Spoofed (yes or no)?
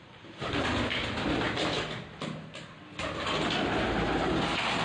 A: no